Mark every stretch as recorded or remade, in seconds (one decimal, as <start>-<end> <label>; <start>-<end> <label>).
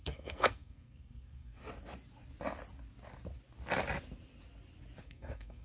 0.0-1.6 remade; 1.6-5.0 recorded; 5.0-5.6 remade